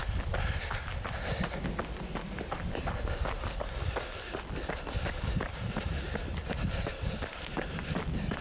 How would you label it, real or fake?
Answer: real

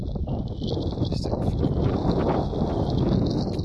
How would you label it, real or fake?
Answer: real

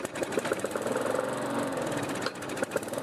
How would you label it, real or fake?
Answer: fake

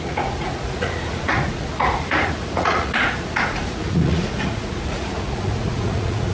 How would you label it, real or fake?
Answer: fake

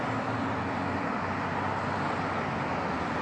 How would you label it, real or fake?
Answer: real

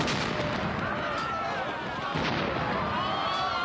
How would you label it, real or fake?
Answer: real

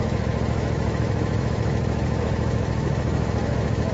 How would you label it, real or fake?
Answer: fake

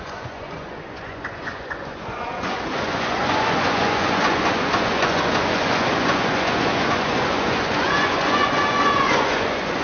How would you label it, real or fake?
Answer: fake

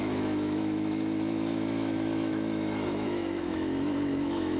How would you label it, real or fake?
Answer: fake